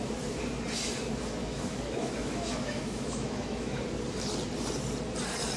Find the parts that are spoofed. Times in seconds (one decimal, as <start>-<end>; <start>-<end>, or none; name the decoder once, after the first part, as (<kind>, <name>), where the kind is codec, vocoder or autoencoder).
1.4-3.8 (autoencoder, DAC-VAE)